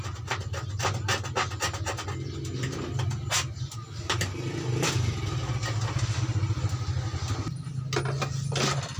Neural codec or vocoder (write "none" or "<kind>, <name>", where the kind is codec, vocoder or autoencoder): none